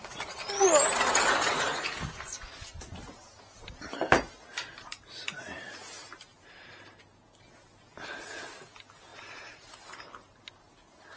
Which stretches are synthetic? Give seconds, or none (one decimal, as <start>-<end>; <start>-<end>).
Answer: 2.9-7.0; 9.1-10.4